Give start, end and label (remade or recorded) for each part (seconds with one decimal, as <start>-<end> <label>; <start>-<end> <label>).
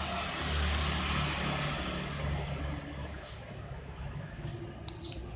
0.0-3.0 recorded; 3.0-4.5 remade; 4.5-5.4 recorded